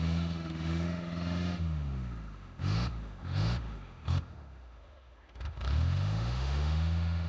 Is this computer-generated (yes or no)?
yes